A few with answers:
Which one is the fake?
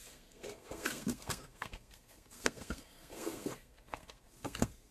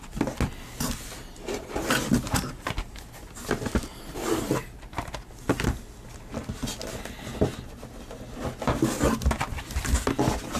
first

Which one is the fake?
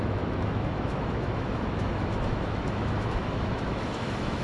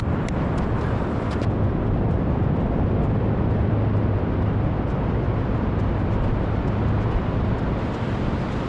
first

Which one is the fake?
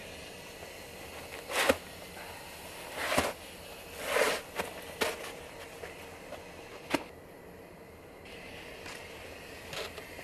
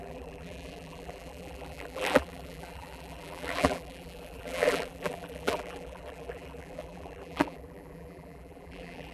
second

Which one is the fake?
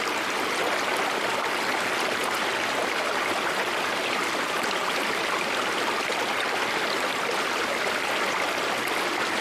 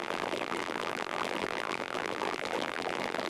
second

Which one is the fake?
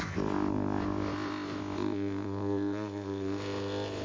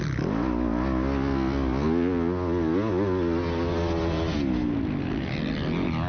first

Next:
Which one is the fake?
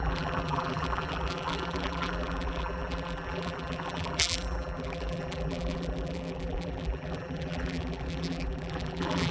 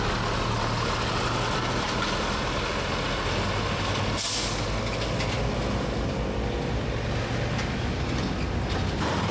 first